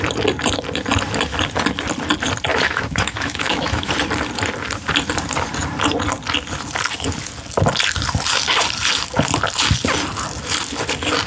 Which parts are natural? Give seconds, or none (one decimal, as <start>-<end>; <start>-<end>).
0.0-2.5; 3.9-11.3